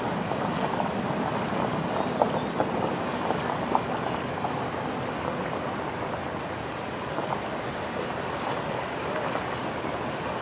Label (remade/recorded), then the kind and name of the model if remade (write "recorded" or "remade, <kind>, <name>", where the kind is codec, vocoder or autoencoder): recorded